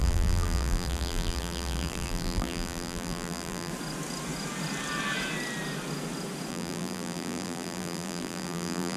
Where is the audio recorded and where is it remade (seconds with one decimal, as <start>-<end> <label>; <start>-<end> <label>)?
0.0-3.7 remade; 3.7-6.5 recorded; 6.5-9.0 remade